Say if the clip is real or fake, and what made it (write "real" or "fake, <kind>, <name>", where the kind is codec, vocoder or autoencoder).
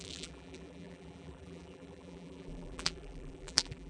fake, vocoder, BigVGAN v2